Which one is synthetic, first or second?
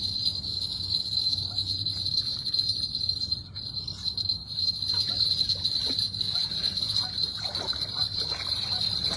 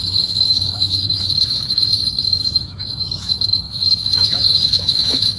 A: second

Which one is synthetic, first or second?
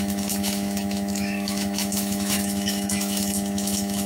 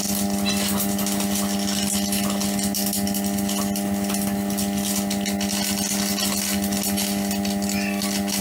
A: first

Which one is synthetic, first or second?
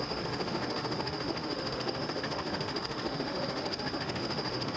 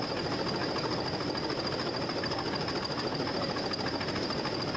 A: first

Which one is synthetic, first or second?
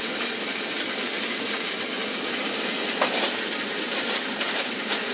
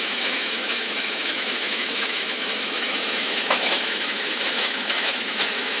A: second